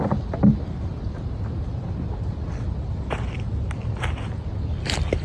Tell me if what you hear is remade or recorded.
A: recorded